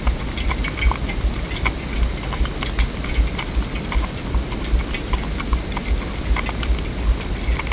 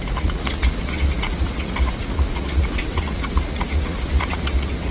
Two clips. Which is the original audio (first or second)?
first